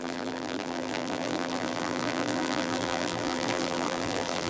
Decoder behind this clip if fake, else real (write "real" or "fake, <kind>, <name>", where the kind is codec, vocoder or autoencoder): fake, vocoder, BigVGAN v2